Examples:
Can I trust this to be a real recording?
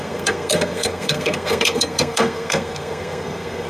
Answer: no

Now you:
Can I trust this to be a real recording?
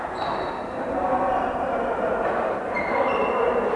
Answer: no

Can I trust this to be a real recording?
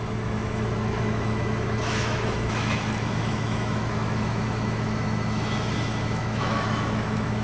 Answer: no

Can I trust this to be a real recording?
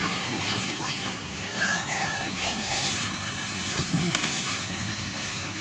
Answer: no